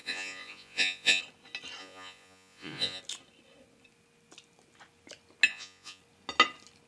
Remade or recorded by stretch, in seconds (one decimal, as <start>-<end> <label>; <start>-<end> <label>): 0.0-1.2 remade; 1.2-1.8 recorded; 1.8-3.0 remade; 3.0-5.5 recorded; 5.5-6.0 remade; 6.0-6.9 recorded